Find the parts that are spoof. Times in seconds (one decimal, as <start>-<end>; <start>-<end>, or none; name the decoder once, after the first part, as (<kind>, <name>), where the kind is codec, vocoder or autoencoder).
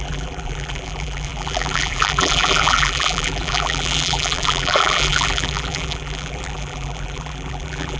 0.0-8.0 (vocoder, BigVGAN v2)